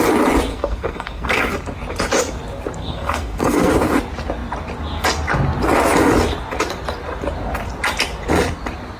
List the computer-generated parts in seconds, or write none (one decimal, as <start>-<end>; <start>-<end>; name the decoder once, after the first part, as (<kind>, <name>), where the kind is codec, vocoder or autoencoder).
0.5-1.5 (codec, SNAC); 2.8-3.7